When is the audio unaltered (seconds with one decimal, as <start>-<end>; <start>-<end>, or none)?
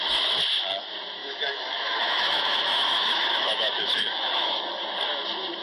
0.0-1.2; 4.6-5.6